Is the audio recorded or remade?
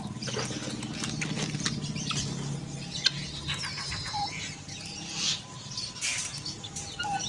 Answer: recorded